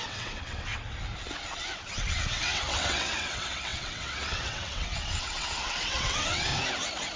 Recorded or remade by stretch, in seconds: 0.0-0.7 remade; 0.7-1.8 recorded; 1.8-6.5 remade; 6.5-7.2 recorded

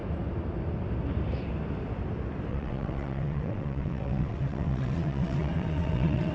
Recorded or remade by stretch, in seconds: 0.0-2.5 recorded; 2.5-6.3 remade

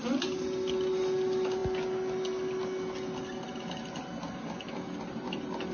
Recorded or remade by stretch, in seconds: 0.0-5.7 recorded